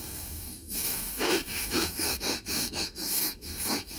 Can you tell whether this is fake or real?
fake